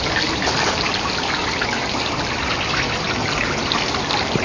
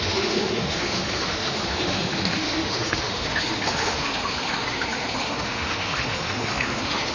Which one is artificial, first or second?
second